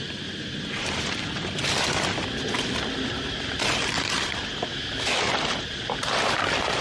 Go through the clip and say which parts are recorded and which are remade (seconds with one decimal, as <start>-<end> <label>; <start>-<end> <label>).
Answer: 0.0-4.7 recorded; 4.7-5.3 remade; 5.3-6.8 recorded